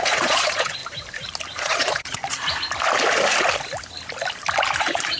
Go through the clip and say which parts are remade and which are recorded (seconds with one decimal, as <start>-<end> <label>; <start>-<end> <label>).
0.0-0.8 remade; 0.8-1.6 recorded; 1.6-2.2 remade; 2.2-4.8 recorded; 4.8-5.2 remade

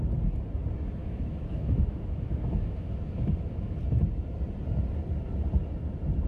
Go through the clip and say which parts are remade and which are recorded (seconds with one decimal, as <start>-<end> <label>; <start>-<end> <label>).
0.0-1.0 recorded; 1.0-3.8 remade; 3.8-6.3 recorded

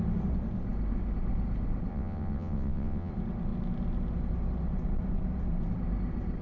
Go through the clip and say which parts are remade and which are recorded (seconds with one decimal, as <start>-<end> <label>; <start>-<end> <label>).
0.0-1.9 recorded; 1.9-3.1 remade; 3.1-6.4 recorded